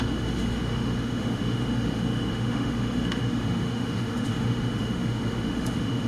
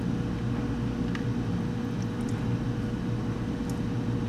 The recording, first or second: second